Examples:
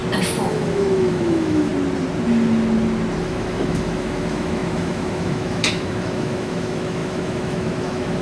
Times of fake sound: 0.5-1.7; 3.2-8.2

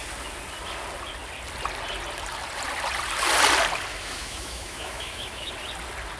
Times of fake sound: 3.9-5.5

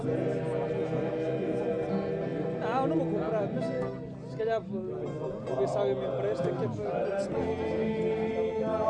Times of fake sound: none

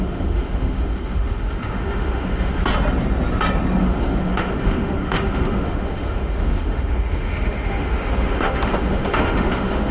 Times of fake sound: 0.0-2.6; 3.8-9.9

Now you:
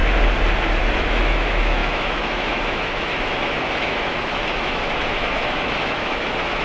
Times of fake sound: 0.8-6.6

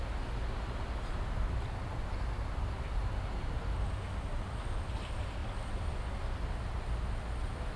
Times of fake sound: none